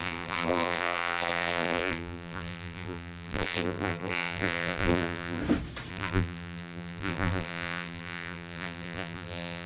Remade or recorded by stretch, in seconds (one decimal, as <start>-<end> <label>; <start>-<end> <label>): 0.0-5.4 remade; 5.4-5.9 recorded; 5.9-9.7 remade